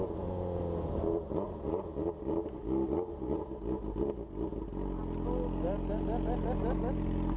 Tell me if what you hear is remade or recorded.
recorded